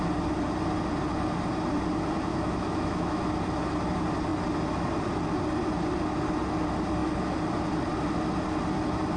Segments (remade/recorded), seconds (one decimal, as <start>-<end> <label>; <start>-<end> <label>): 0.0-2.3 recorded; 2.3-3.2 remade; 3.2-9.2 recorded